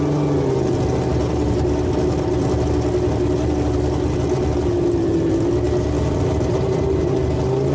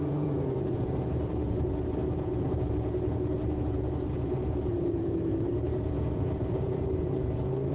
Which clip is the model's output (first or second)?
second